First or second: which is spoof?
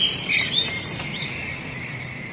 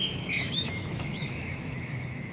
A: second